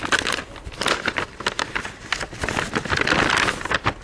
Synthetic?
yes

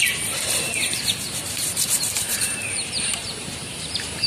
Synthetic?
yes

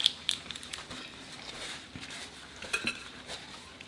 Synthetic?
yes